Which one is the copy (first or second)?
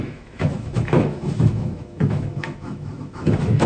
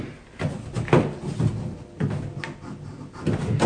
first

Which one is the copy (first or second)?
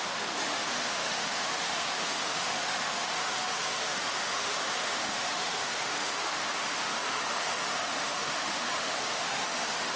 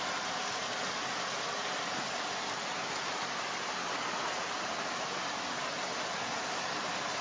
first